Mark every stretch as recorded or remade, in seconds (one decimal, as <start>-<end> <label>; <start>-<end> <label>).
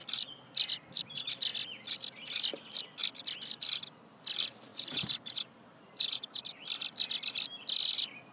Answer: 0.0-4.7 recorded; 4.7-6.4 remade; 6.4-8.3 recorded